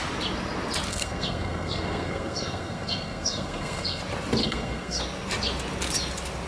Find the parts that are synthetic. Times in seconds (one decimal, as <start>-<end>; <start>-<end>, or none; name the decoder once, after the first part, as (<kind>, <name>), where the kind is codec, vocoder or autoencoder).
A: 0.9-4.0 (codec, SNAC); 4.4-5.0